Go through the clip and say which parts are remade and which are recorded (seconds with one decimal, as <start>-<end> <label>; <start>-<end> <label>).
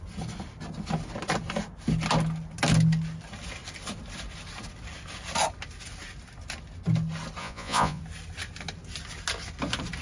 0.0-7.4 recorded; 7.4-8.0 remade; 8.0-10.0 recorded